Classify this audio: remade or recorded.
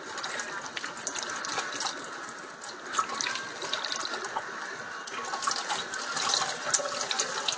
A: recorded